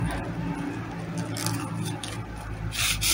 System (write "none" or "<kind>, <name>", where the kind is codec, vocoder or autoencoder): none